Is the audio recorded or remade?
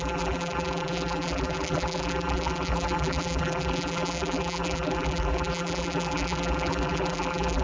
remade